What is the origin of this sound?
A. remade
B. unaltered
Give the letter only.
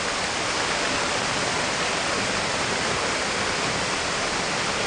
B